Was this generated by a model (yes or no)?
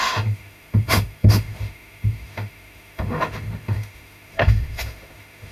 yes